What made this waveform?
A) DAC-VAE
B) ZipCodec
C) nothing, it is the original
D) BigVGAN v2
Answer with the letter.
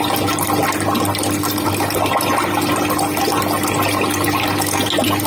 C